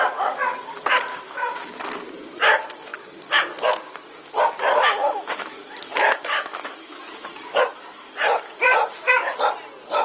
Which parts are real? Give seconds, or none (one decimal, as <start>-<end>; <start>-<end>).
0.0-1.1; 1.7-5.0; 7.3-10.0